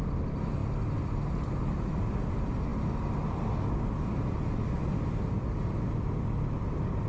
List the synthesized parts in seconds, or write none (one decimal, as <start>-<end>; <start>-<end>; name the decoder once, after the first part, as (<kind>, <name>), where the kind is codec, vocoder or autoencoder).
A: none